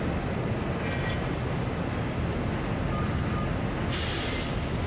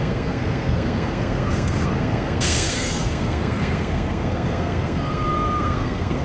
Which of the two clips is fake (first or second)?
second